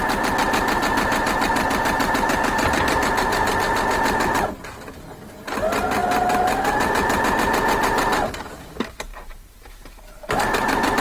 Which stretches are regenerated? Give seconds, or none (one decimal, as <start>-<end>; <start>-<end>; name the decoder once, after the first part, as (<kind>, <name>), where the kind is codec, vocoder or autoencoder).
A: none